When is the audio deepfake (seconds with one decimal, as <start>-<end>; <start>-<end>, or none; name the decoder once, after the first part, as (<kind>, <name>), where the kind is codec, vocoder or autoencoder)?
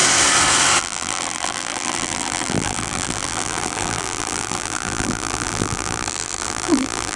0.8-7.2 (vocoder, BigVGAN v2)